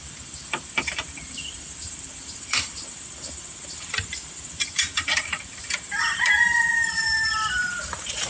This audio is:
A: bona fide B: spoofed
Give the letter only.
B